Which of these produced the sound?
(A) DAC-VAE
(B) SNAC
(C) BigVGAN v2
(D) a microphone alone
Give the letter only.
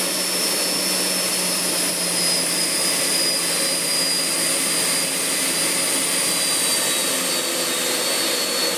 D